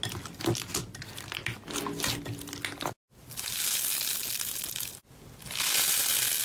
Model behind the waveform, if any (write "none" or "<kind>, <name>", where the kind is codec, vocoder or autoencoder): none